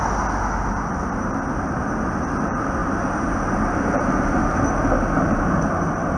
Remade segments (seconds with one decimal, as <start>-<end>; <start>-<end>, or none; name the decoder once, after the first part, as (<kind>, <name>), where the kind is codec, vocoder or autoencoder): none